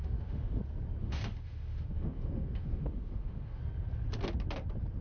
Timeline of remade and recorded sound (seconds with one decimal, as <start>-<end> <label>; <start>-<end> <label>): 0.0-0.6 remade; 0.6-1.0 recorded; 1.0-3.6 remade; 3.6-5.0 recorded